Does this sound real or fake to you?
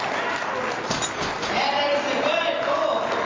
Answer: real